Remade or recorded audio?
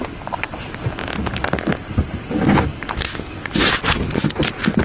recorded